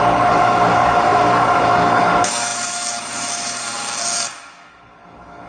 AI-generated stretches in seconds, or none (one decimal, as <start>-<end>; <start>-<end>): 0.0-5.5